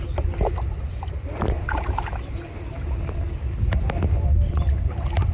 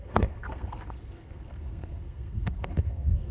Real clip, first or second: first